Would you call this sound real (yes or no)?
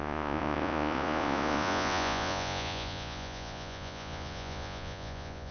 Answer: no